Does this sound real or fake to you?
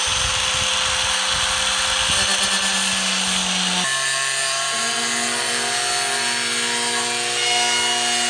real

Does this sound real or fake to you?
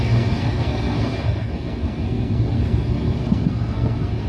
fake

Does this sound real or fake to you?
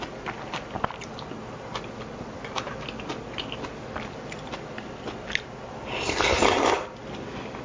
real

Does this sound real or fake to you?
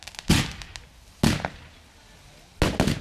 real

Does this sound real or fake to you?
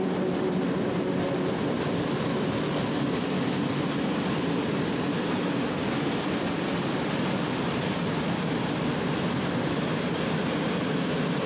real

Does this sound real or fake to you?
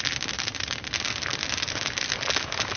real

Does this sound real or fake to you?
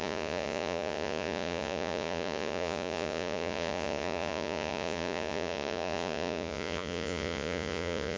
fake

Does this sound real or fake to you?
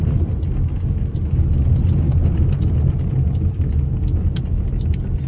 real